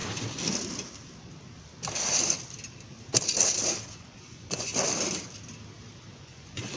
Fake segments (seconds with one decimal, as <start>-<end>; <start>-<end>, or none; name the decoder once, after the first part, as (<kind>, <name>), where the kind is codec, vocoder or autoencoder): 3.9-4.7 (vocoder, Vocos); 6.1-6.8